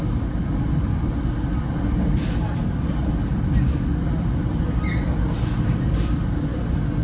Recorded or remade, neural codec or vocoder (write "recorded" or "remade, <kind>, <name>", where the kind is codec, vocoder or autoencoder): recorded